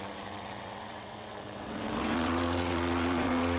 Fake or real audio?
fake